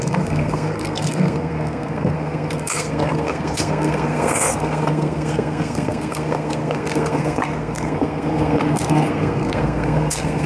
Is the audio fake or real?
fake